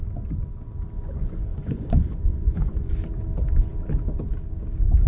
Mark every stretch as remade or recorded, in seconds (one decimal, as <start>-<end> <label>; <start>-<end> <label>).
0.0-1.0 recorded; 1.0-2.9 remade; 2.9-5.1 recorded